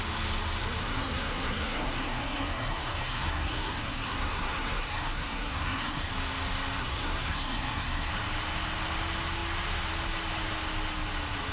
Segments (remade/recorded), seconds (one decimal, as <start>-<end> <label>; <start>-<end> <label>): 0.0-0.8 recorded; 0.8-6.1 remade; 6.1-6.8 recorded; 6.8-8.1 remade; 8.1-11.5 recorded